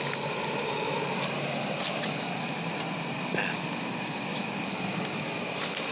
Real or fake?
real